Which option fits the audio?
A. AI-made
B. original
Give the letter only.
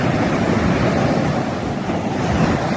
B